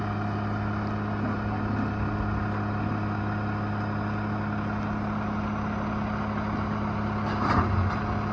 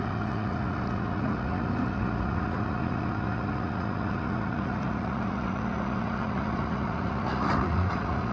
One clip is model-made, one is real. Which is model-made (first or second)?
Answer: second